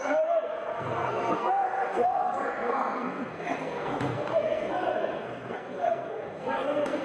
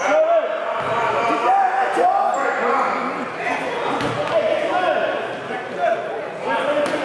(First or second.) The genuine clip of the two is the second